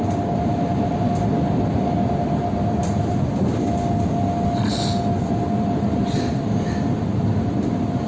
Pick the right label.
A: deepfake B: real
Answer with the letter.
B